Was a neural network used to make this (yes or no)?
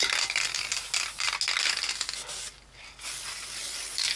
no